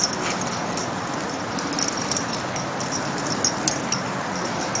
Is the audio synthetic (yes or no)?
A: no